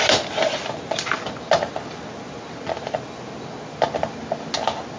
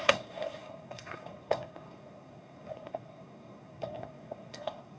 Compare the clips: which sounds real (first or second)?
first